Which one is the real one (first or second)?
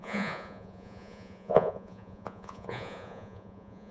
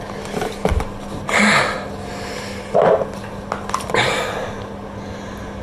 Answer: second